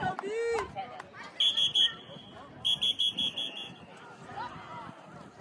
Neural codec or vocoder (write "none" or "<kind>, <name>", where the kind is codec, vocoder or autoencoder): none